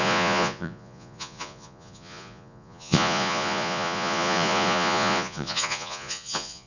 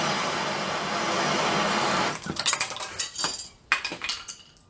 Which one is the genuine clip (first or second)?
second